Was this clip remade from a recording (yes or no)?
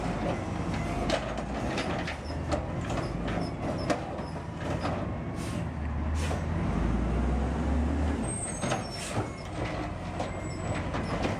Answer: no